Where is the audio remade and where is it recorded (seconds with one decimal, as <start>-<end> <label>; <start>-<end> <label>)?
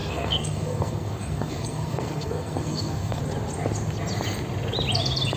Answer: 0.0-3.2 remade; 3.2-5.4 recorded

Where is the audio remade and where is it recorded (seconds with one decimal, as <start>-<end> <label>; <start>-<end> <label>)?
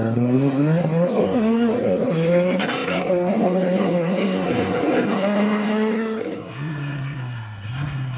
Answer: 0.0-8.2 remade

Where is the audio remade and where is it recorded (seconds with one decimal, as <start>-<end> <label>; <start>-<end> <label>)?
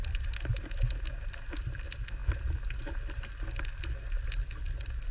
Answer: 0.0-5.1 recorded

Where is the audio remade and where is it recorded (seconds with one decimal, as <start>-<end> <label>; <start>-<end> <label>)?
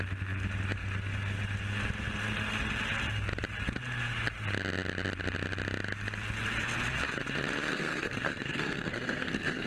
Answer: 0.0-7.7 recorded; 7.7-9.7 remade